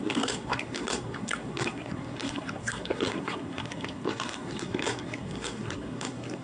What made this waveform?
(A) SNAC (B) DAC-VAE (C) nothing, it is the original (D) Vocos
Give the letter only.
A